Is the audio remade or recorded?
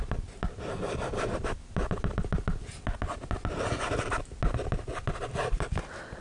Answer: recorded